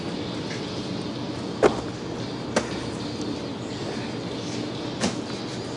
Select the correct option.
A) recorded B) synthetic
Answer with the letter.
A